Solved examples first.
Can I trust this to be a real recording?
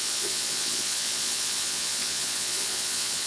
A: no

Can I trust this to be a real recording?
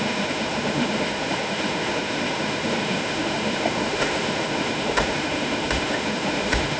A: no